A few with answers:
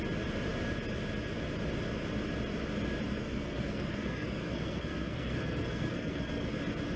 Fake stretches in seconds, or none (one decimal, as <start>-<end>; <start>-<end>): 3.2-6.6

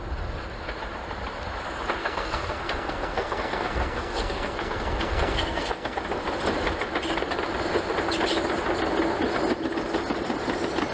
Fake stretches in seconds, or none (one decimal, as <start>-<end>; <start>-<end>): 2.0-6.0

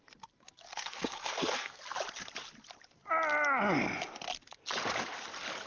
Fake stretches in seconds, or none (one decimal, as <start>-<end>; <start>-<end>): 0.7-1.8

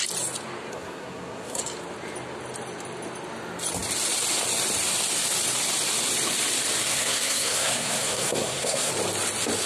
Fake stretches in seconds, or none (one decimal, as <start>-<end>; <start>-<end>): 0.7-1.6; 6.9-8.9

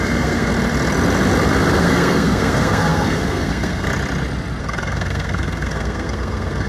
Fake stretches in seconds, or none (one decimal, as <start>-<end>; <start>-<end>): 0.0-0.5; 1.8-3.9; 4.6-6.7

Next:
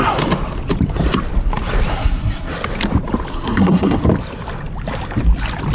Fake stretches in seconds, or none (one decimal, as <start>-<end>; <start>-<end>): 1.9-2.5; 3.3-4.0

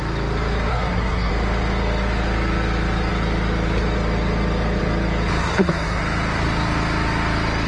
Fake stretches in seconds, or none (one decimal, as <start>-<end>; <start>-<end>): 0.7-1.3; 5.4-6.0

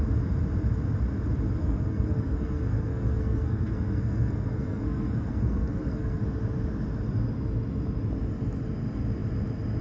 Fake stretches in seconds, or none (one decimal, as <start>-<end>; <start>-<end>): 1.6-6.2